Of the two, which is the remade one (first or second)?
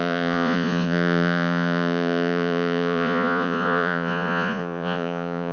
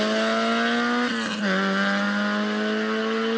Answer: first